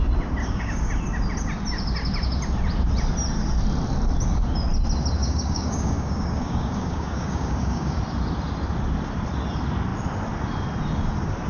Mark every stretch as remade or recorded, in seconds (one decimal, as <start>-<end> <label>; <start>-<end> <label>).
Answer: 0.0-0.4 recorded; 0.4-0.9 remade; 0.9-5.2 recorded; 5.2-8.0 remade; 8.0-11.5 recorded